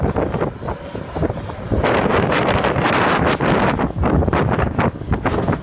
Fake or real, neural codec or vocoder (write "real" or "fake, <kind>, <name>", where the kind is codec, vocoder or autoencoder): real